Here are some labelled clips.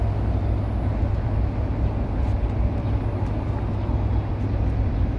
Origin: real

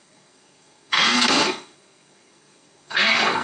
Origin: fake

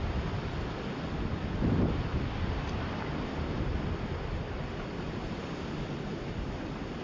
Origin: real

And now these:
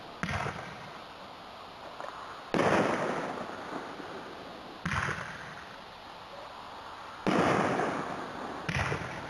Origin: real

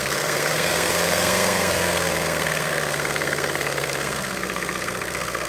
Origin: fake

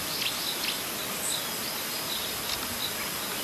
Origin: real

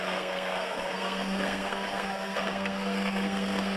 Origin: fake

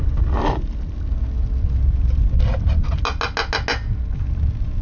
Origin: real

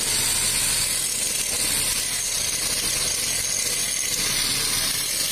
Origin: real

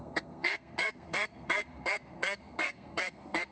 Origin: fake